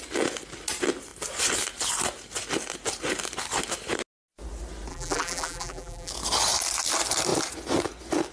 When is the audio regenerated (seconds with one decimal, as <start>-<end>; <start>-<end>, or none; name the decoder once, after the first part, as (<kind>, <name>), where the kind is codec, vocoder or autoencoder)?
4.9-6.1 (vocoder, BigVGAN v2)